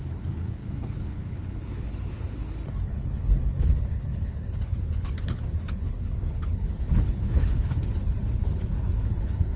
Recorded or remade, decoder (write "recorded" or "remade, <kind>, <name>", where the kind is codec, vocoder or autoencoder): remade, codec, HILCodec